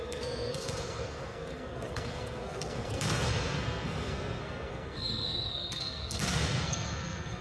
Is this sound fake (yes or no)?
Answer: yes